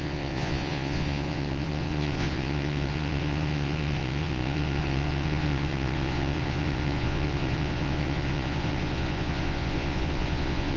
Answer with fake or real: fake